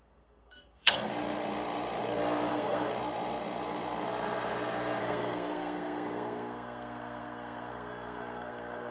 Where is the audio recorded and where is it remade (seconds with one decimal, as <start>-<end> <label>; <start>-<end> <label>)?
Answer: 0.0-1.1 remade; 1.1-2.5 recorded; 2.5-2.9 remade; 2.9-5.0 recorded; 5.0-8.9 remade